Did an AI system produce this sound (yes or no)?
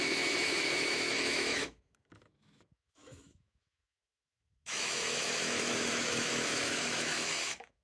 yes